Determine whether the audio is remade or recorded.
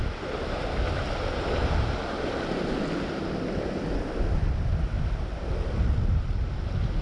recorded